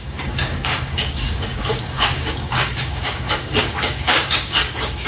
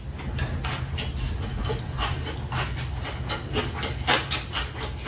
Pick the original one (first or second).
second